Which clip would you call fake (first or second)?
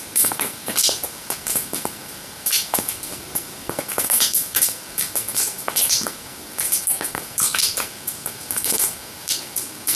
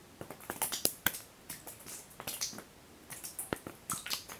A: first